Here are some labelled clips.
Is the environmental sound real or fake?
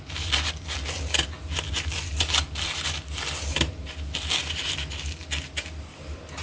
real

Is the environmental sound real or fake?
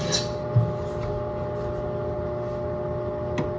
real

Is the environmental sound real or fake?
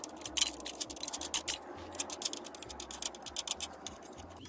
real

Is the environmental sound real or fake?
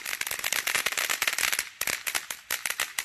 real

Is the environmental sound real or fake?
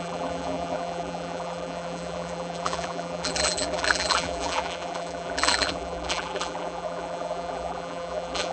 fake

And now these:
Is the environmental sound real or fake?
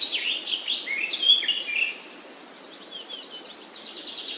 real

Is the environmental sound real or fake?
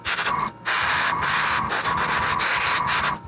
real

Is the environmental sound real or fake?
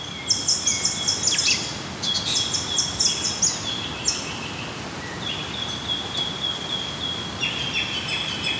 real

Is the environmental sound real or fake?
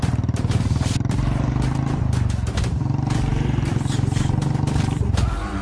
real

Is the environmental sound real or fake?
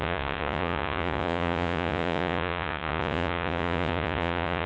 fake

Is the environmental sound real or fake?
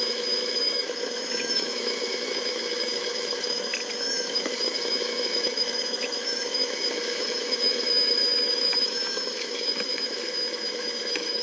fake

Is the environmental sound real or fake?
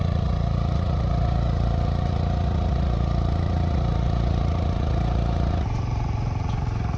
fake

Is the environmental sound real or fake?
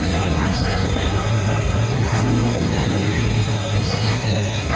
fake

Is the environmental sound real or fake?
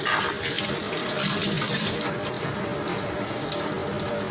real